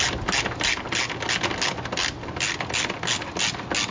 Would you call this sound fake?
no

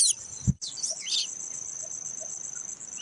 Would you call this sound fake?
no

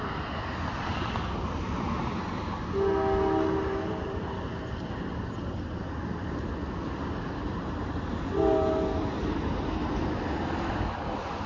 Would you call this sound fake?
no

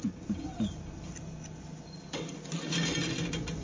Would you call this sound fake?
no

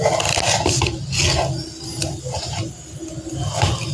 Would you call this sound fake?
no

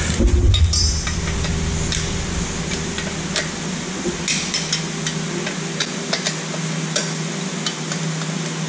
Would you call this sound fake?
no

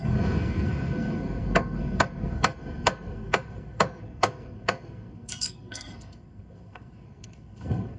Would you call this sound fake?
yes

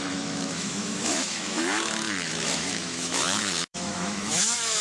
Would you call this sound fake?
yes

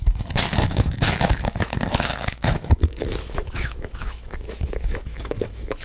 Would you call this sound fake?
yes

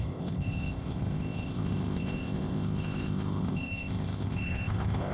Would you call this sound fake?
yes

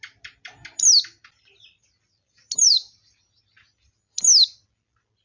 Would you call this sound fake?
no